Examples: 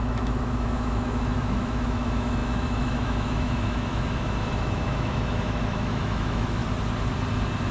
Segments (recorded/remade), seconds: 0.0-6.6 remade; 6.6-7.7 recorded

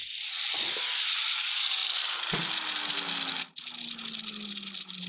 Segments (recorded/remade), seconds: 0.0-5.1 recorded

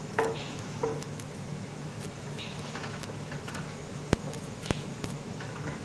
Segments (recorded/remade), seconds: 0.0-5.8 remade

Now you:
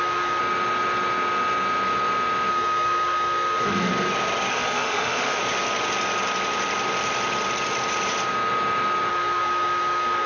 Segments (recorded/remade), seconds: 0.0-0.4 remade; 0.4-2.5 recorded; 2.5-3.9 remade; 3.9-4.5 recorded; 4.5-5.4 remade; 5.4-9.1 recorded; 9.1-10.3 remade